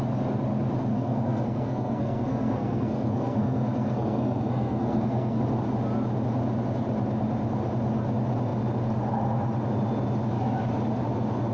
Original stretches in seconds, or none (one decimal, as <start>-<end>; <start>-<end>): 0.0-0.9; 5.4-11.5